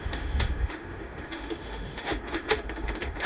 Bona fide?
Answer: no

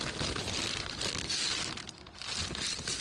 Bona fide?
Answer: yes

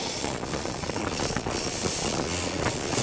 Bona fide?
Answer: no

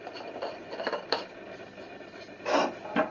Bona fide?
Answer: yes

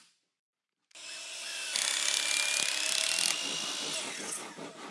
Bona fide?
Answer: yes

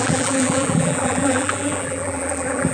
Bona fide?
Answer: no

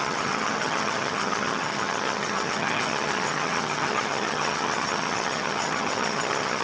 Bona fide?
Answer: no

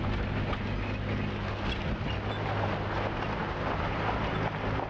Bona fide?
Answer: yes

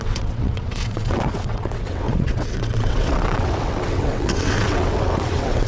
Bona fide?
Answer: no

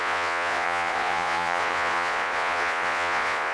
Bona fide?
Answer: no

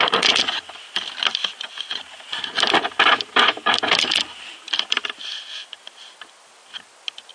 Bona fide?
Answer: yes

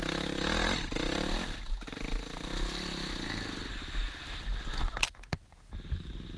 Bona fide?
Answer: yes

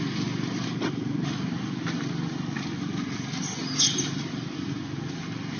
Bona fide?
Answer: yes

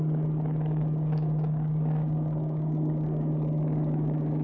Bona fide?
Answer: no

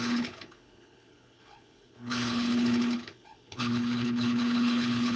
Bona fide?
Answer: no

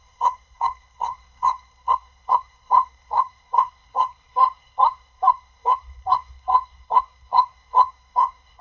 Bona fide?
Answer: no